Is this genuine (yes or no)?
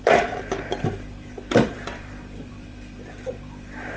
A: no